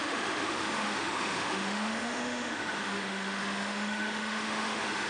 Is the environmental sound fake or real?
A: fake